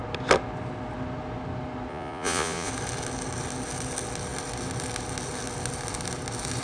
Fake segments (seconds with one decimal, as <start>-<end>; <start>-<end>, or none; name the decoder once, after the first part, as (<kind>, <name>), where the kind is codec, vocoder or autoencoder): 1.9-2.7 (vocoder, Vocos)